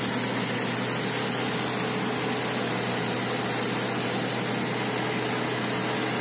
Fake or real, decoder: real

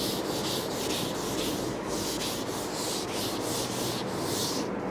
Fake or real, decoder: real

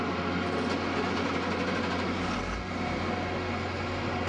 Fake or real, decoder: real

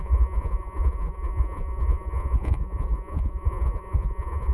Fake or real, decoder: fake, vocoder, Vocos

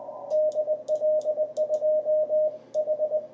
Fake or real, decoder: real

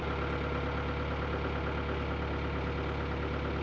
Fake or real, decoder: real